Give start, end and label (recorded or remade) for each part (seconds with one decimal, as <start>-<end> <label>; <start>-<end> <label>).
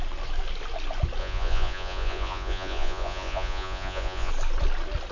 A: 0.0-1.2 recorded; 1.2-4.3 remade; 4.3-5.1 recorded